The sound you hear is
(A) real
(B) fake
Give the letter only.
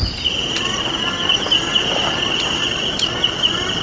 A